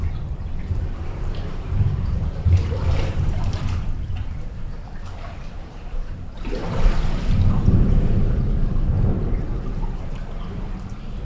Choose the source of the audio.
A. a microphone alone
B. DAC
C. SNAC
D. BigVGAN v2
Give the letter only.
D